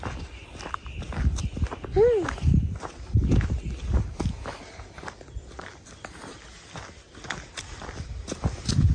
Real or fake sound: real